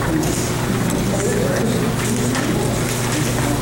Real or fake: real